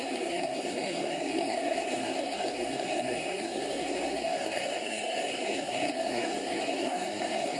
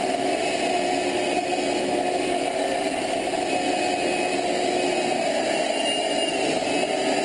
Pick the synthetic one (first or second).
first